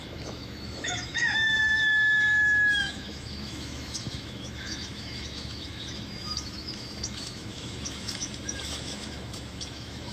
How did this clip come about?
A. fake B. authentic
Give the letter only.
A